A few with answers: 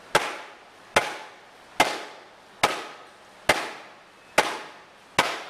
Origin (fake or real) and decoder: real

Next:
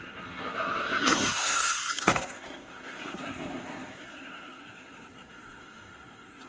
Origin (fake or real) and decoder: fake, codec, SNAC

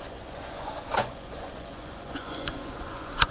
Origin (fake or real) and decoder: fake, vocoder, Vocos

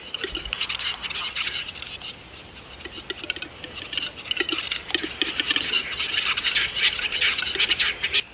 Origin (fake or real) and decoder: real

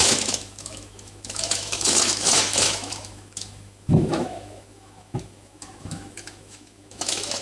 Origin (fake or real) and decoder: fake, autoencoder, DAC-VAE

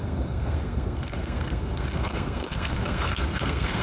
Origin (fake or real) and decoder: fake, codec, SNAC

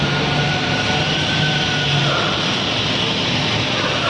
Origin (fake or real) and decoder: real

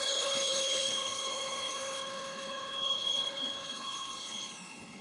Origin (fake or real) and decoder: fake, codec, HILCodec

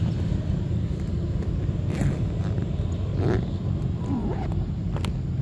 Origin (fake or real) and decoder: real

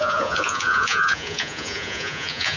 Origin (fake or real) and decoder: fake, vocoder, Vocos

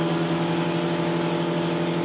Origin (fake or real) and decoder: real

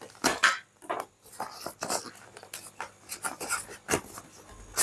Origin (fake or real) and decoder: real